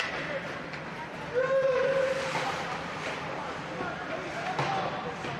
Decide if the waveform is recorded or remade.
remade